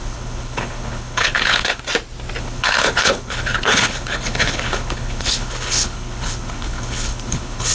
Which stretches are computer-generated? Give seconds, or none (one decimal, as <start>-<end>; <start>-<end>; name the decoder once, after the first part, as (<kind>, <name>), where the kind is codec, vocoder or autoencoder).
0.0-1.8 (codec, HILCodec); 2.4-7.7